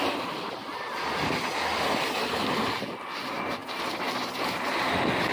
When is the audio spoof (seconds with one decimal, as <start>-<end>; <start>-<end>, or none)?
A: none